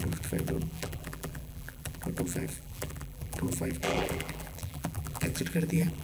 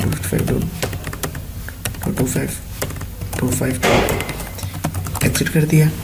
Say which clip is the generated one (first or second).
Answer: first